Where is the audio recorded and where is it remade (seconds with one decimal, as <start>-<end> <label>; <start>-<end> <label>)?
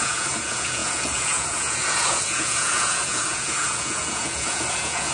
0.0-5.1 remade